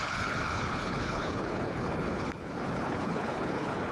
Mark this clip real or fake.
fake